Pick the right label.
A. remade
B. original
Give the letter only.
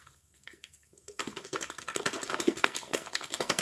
A